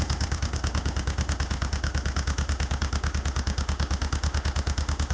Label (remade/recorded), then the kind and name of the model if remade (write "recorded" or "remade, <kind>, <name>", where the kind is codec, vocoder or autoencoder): remade, autoencoder, DAC-VAE